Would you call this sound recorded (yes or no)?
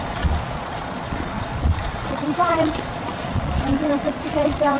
no